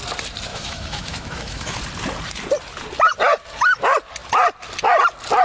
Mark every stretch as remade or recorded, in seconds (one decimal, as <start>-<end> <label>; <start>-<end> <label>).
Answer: 0.0-0.5 recorded; 0.5-1.8 remade; 1.8-5.4 recorded